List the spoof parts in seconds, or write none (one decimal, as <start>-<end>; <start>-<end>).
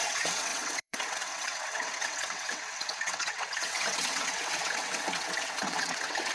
0.0-6.3